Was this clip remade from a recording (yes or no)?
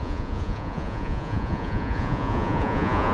yes